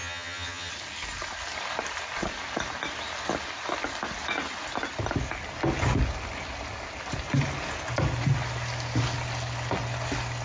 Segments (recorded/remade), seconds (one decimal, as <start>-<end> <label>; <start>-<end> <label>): 0.0-0.7 remade; 0.7-10.4 recorded

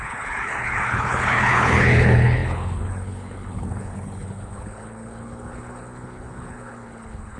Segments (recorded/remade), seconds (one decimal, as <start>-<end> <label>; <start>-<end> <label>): 0.0-7.4 remade

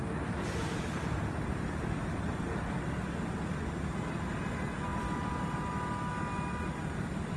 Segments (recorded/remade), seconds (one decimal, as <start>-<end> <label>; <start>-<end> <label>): 0.0-7.4 recorded

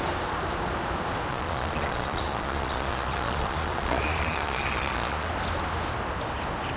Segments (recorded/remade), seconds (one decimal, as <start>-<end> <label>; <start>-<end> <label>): 0.0-1.3 recorded; 1.3-5.3 remade; 5.3-6.8 recorded

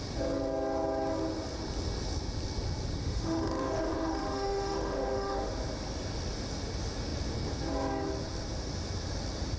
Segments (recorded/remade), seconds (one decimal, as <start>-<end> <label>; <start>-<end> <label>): 0.0-3.0 recorded; 3.0-5.5 remade; 5.5-9.6 recorded

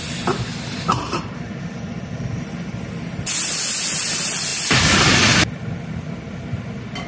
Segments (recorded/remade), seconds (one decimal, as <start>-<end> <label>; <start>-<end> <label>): 0.0-7.1 recorded